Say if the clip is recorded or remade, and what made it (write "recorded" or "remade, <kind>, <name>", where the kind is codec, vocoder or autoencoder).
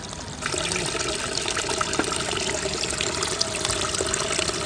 recorded